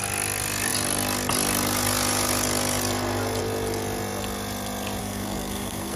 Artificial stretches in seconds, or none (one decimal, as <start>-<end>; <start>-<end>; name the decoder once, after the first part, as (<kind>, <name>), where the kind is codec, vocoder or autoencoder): 5.0-6.0 (codec, SNAC)